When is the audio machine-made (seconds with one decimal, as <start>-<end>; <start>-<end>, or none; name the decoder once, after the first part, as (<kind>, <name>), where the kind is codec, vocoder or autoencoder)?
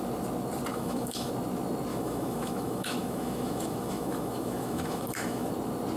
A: 0.7-1.3 (autoencoder, DAC-VAE); 1.9-5.5